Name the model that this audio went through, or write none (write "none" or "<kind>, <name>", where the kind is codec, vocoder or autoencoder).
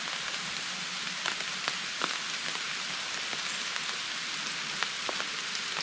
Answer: none